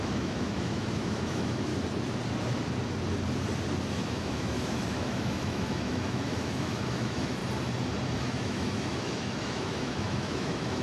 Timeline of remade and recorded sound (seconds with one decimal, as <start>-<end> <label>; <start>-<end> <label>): 0.0-1.7 remade; 1.7-3.8 recorded; 3.8-7.4 remade; 7.4-8.2 recorded; 8.2-10.8 remade